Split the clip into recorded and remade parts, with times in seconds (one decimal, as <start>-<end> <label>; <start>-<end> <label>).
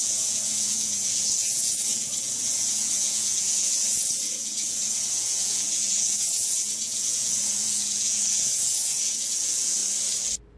0.0-9.8 remade; 9.8-10.6 recorded